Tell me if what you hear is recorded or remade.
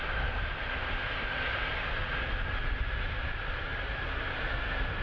recorded